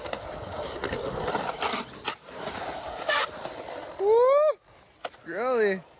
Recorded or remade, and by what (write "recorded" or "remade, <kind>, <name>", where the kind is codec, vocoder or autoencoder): recorded